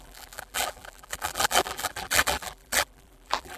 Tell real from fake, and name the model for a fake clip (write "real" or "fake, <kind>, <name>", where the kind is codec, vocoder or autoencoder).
fake, vocoder, BigVGAN v2